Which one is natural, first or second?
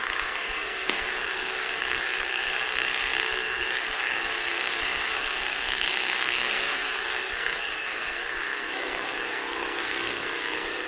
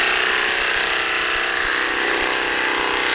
second